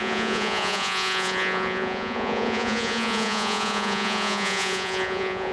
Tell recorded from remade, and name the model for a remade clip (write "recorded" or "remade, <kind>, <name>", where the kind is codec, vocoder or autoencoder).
remade, vocoder, Vocos